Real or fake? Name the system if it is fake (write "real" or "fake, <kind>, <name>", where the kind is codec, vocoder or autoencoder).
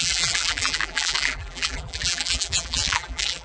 fake, vocoder, BigVGAN v2